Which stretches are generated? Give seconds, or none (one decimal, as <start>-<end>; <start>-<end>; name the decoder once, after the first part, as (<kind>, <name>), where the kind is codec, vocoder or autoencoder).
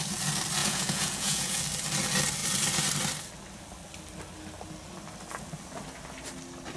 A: 0.6-1.6 (vocoder, Vocos)